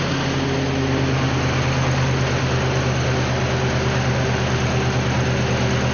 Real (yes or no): yes